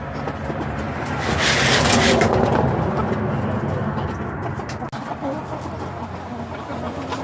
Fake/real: real